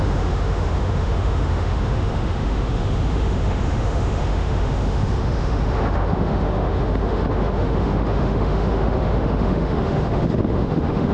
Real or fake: fake